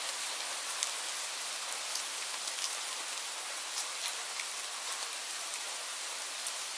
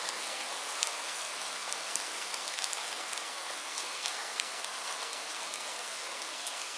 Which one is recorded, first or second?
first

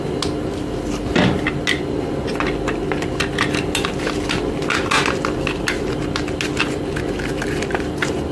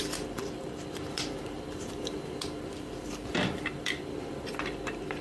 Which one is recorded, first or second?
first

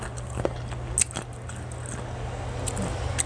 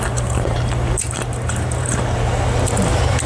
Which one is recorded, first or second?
first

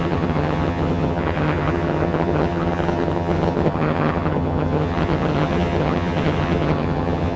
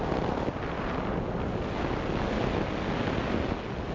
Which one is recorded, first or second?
second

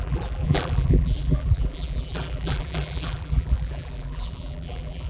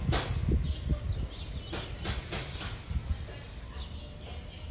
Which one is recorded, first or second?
second